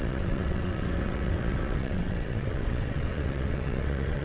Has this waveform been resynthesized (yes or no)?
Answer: yes